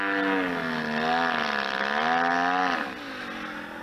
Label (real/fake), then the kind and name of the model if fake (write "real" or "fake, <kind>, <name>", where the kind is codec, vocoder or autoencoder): real